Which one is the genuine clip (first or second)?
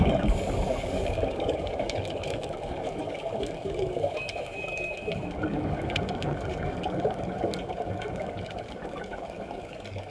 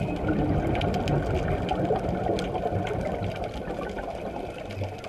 second